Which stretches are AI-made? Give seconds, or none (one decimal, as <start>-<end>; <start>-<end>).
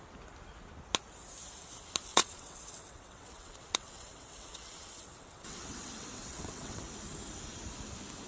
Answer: 2.1-6.8